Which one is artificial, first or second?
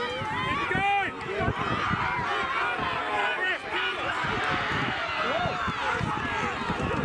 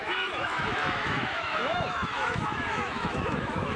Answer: second